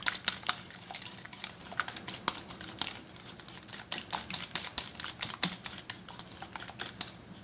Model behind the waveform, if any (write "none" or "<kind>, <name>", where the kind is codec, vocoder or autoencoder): none